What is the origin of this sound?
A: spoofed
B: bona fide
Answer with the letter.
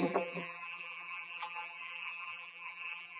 A